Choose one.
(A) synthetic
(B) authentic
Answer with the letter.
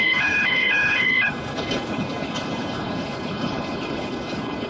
A